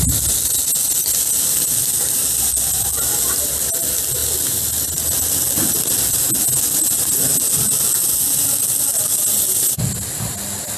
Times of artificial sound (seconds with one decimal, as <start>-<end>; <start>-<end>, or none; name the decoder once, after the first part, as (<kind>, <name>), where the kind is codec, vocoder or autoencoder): none